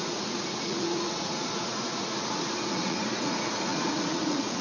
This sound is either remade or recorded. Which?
remade